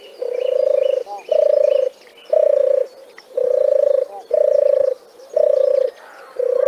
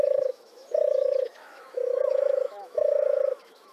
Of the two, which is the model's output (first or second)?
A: second